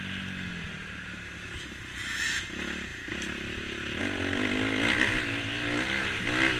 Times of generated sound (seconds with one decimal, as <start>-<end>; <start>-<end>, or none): none